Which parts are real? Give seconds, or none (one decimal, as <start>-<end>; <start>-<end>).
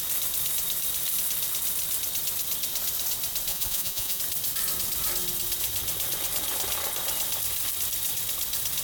0.0-3.5; 4.2-8.8